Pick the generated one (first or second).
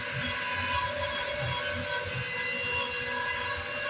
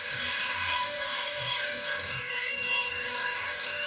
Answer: second